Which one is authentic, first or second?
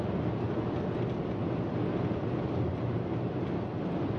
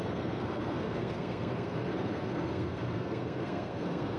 first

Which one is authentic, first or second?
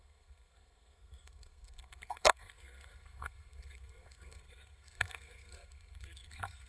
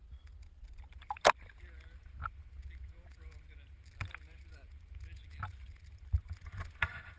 second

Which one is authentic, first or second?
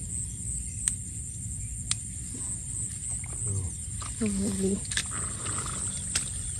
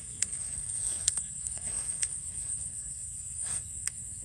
first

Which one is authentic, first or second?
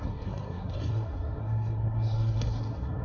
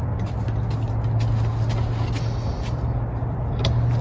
second